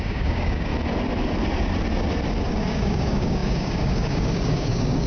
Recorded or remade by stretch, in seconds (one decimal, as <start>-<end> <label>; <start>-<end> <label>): 0.0-0.7 remade; 0.7-2.4 recorded; 2.4-5.1 remade